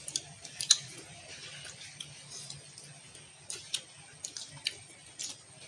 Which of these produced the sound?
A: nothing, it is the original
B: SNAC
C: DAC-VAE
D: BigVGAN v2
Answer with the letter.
A